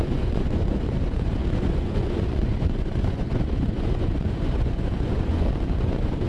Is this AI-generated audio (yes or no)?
yes